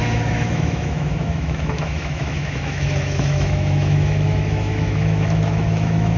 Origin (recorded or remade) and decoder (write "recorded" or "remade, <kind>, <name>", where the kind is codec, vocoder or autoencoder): remade, autoencoder, DAC-VAE